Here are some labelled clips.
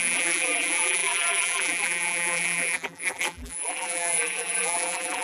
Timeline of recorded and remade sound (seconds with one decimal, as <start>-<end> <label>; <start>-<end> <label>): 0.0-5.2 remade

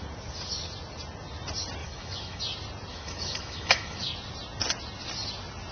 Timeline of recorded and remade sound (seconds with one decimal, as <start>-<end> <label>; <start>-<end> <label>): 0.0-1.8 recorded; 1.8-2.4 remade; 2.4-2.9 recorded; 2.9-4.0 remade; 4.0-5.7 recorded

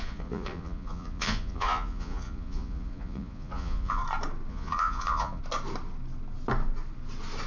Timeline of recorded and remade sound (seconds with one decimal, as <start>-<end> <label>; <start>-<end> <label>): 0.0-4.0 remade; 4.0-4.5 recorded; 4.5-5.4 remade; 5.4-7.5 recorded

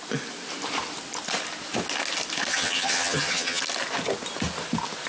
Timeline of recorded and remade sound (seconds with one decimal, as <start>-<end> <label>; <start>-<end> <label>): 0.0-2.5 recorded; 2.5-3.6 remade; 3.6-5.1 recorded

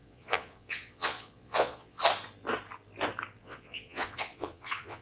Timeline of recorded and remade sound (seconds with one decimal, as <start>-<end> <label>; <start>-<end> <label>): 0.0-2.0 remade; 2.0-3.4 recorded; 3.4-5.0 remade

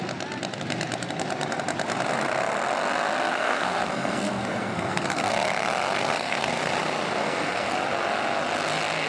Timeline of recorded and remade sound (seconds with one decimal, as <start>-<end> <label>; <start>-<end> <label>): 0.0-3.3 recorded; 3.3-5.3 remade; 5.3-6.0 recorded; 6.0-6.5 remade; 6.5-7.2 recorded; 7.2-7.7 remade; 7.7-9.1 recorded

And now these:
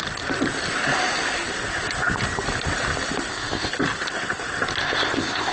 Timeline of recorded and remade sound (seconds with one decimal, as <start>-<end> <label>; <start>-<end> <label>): 0.0-3.3 recorded; 3.3-3.7 remade; 3.7-4.8 recorded; 4.8-5.5 remade